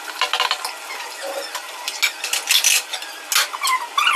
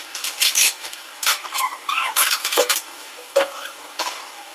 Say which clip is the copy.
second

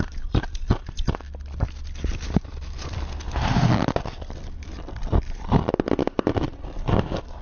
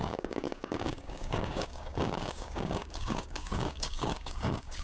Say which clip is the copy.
second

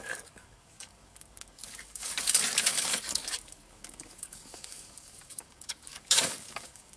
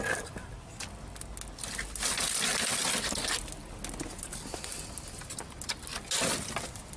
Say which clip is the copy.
first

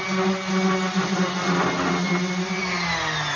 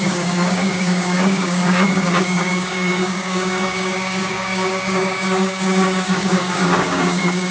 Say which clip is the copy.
second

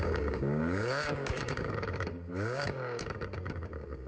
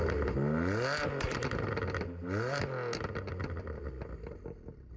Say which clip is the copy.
first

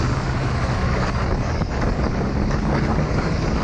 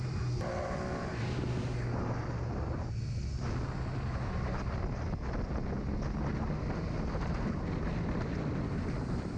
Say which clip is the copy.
first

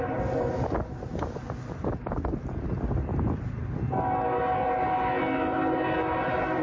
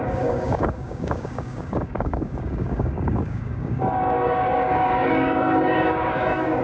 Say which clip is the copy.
second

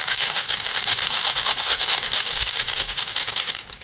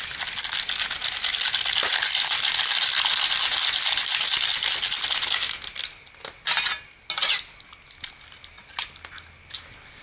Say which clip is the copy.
first